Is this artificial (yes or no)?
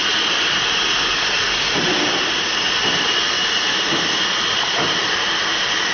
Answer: no